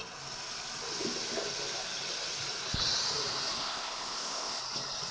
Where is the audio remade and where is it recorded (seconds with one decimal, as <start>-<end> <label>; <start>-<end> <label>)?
0.0-3.6 recorded; 3.6-4.6 remade; 4.6-5.1 recorded